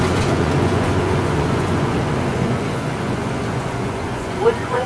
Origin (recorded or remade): remade